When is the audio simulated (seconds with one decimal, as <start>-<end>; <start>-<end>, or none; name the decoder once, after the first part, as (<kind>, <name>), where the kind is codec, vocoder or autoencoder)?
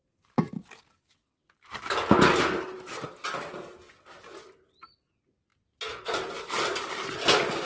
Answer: none